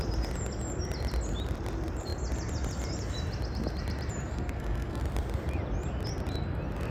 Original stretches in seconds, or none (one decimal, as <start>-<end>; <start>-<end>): 0.0-4.3; 5.0-6.9